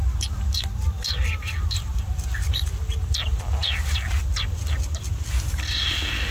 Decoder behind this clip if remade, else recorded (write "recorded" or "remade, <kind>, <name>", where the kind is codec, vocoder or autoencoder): recorded